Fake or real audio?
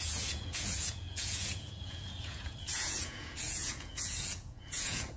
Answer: fake